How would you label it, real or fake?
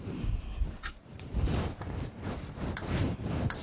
fake